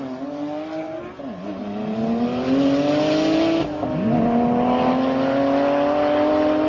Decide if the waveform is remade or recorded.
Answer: recorded